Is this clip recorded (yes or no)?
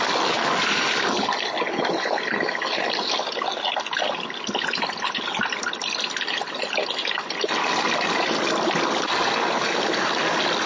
yes